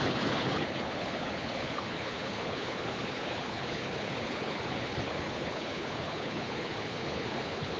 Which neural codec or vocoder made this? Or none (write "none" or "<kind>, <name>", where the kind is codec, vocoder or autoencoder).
codec, HILCodec